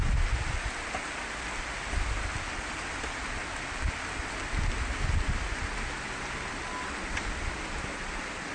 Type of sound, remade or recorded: recorded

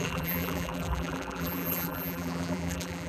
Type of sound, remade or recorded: remade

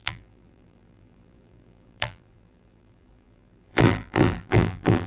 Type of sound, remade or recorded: remade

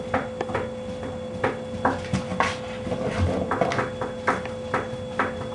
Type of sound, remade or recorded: recorded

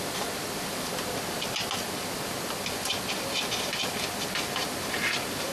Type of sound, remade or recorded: recorded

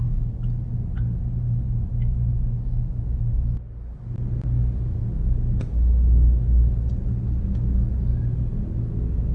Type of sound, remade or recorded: recorded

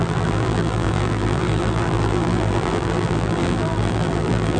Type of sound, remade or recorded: remade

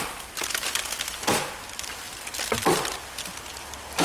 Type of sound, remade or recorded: recorded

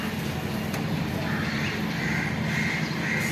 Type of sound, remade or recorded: recorded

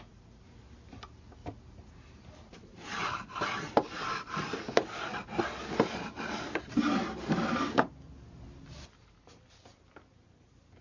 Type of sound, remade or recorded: recorded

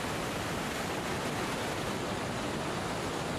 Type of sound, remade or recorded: recorded